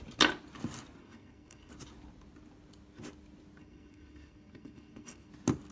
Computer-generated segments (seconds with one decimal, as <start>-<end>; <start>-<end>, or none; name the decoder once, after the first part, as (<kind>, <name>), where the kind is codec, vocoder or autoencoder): 1.0-1.7 (codec, SNAC); 3.6-5.3